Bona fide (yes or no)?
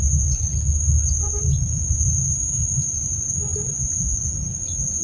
yes